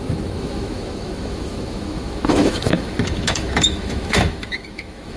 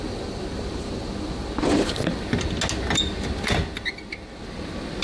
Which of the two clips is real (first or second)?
second